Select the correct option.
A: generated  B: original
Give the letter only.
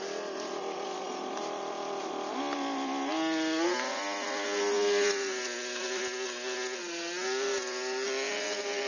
B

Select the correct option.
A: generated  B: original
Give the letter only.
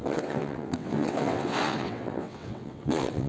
A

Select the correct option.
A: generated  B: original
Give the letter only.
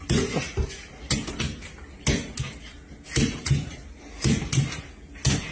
B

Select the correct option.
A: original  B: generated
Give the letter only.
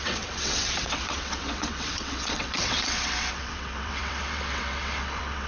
B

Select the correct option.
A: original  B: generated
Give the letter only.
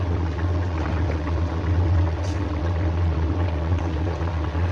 B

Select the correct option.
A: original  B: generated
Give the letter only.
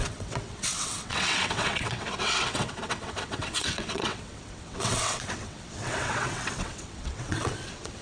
B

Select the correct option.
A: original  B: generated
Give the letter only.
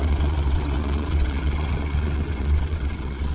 B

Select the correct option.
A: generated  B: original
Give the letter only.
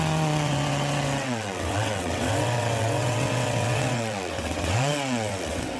A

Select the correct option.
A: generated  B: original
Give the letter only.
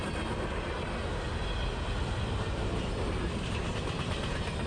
B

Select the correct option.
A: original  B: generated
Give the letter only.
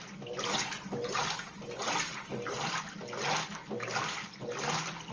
A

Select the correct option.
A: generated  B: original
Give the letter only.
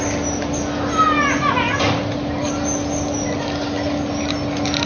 B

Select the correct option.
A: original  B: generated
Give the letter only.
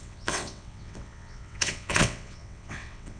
B